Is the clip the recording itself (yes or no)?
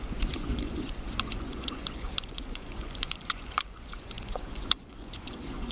no